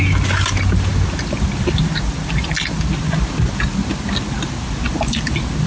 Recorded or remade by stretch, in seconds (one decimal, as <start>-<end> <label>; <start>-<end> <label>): 0.0-5.7 recorded